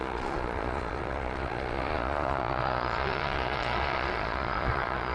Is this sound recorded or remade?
remade